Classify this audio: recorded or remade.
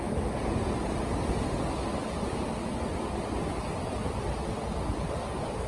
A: recorded